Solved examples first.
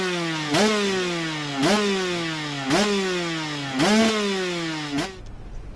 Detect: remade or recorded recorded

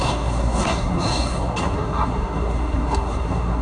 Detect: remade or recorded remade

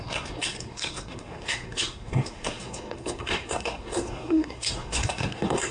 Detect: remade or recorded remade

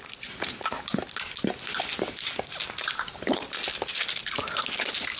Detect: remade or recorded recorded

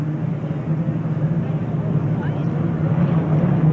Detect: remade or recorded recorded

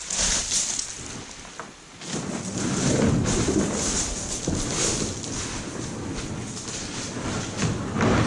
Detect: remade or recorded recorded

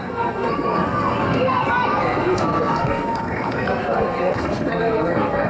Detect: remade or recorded remade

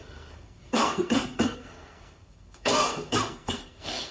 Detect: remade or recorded remade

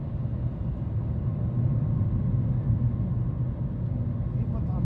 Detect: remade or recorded recorded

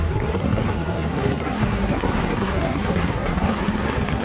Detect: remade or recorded remade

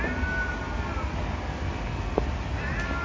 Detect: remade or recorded recorded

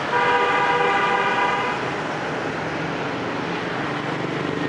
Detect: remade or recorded recorded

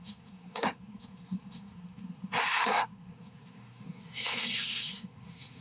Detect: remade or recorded remade